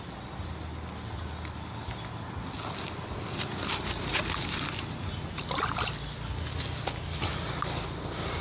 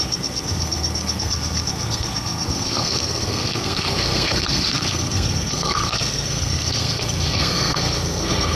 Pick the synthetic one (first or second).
second